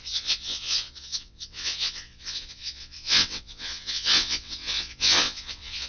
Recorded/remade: remade